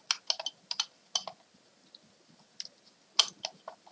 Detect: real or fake real